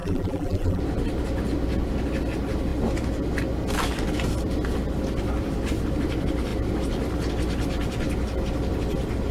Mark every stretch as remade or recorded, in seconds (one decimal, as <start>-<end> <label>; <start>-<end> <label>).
0.0-0.8 remade; 0.8-9.3 recorded